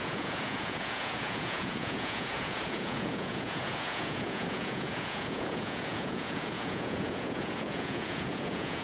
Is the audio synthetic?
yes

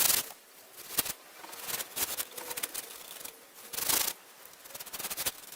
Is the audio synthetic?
no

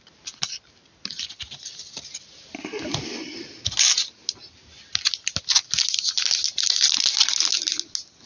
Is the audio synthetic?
no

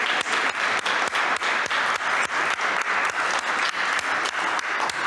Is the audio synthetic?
no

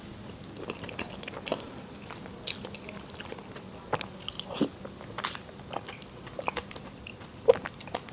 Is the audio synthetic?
no